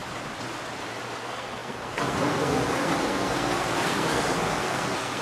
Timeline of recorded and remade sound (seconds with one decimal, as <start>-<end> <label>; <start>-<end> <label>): 0.0-1.2 recorded; 1.2-5.2 remade